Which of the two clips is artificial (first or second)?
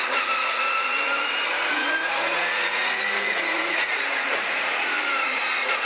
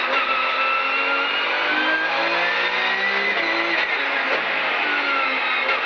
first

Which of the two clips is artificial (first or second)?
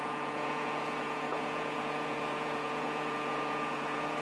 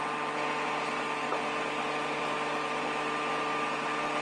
first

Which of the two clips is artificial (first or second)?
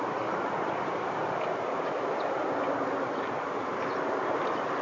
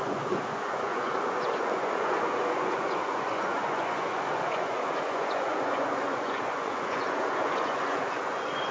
second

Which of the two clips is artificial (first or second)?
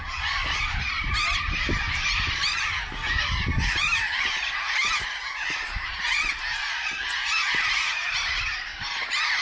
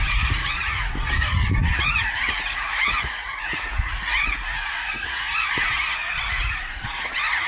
second